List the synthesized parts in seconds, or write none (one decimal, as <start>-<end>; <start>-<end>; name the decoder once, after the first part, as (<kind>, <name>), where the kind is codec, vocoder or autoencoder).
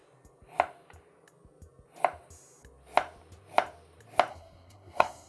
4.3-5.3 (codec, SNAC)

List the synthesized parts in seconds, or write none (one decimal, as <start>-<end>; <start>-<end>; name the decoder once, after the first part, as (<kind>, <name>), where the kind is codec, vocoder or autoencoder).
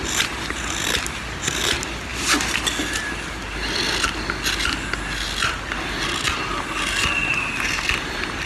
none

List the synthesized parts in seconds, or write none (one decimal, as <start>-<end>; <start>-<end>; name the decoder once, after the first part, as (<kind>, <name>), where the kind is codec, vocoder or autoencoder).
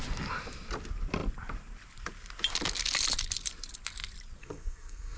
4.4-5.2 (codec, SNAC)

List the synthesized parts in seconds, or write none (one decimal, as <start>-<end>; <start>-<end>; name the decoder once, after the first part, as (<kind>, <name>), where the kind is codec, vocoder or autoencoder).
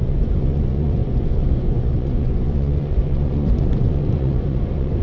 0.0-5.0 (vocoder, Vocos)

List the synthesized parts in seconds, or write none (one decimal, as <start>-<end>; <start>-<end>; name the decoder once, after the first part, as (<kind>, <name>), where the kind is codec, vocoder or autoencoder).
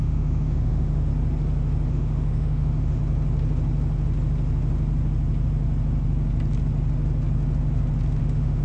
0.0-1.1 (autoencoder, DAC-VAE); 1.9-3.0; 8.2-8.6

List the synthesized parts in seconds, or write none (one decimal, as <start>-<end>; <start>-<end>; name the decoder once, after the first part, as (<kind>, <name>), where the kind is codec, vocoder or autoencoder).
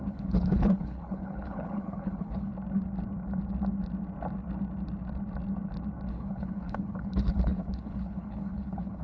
0.0-2.5 (codec, HILCodec); 6.1-9.0